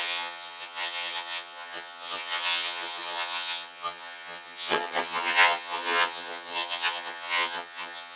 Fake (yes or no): yes